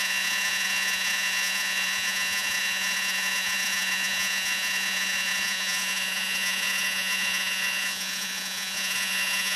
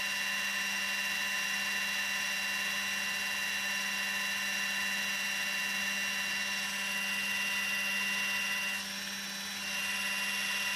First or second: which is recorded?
second